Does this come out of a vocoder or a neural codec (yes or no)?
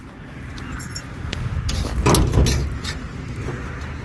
no